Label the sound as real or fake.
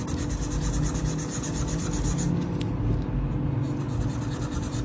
real